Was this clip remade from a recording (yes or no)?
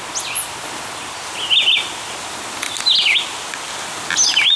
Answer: no